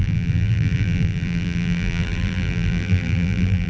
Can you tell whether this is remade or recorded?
remade